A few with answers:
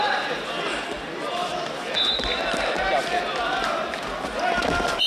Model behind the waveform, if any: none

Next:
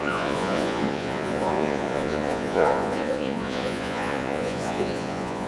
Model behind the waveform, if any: vocoder, Vocos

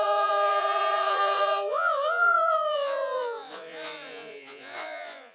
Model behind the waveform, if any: vocoder, Vocos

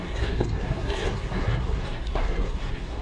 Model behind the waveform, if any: codec, SNAC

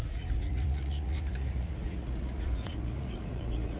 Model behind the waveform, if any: vocoder, Vocos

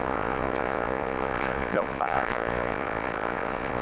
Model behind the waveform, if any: vocoder, Vocos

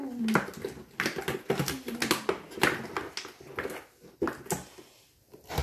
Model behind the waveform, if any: none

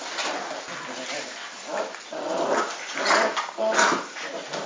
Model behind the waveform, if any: none